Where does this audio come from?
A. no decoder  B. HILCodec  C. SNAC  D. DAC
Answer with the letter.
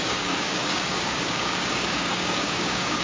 D